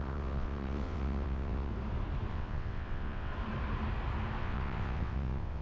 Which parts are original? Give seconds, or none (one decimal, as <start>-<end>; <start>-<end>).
1.7-2.3; 3.3-4.4